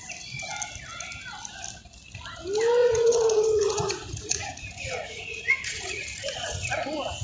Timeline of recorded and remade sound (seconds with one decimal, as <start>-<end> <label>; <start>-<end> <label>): 0.0-2.8 recorded; 2.8-6.7 remade; 6.7-7.2 recorded

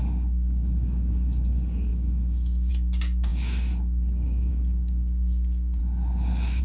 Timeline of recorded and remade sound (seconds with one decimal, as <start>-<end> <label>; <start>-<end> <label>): 0.0-5.8 remade; 5.8-6.6 recorded